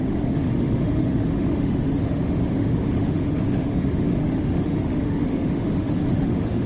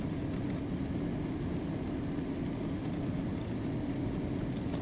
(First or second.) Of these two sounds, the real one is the second